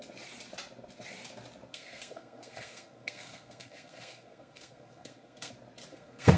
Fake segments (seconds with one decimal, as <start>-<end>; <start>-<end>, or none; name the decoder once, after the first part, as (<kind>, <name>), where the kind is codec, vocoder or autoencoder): 1.7-5.5 (codec, SNAC); 5.9-6.4